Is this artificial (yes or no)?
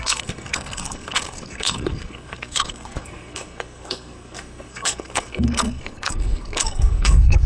yes